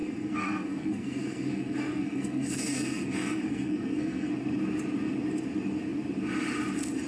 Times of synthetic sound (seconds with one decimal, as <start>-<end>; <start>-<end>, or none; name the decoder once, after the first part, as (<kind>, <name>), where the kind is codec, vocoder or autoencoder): 0.0-4.3 (codec, SNAC)

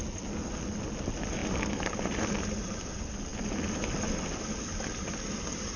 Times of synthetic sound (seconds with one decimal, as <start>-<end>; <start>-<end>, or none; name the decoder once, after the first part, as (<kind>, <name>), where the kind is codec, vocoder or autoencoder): none

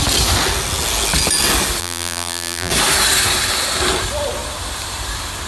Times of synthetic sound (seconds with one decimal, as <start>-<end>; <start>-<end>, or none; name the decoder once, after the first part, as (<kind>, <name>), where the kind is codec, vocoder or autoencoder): 1.8-2.7 (vocoder, BigVGAN v2)

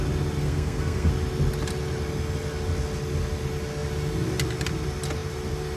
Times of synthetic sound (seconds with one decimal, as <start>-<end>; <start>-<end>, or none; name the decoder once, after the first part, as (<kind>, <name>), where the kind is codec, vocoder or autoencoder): 0.4-1.1 (codec, SNAC)